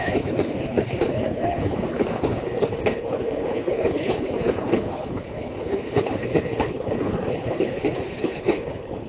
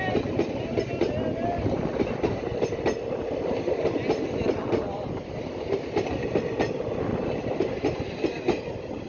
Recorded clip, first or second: second